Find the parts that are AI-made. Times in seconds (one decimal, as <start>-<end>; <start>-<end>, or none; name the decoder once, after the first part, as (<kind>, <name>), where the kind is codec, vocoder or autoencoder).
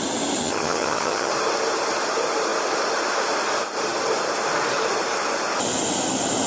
0.4-1.3 (vocoder, HiFi-GAN)